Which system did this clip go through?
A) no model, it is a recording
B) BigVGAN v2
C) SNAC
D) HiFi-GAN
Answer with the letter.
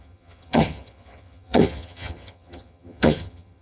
D